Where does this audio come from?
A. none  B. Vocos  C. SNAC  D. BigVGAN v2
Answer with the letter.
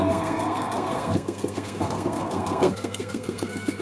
C